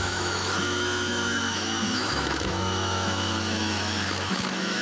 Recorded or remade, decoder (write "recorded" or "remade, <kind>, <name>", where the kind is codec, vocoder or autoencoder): remade, autoencoder, DAC-VAE